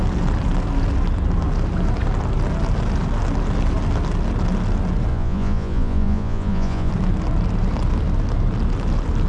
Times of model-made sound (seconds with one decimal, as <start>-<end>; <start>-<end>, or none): 5.1-6.9